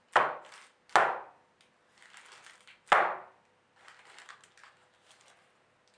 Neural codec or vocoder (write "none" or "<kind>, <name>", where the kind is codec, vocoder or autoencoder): none